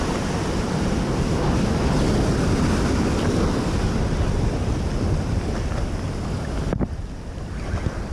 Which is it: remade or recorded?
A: remade